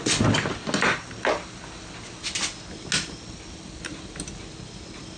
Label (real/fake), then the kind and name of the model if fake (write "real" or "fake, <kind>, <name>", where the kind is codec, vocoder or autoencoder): real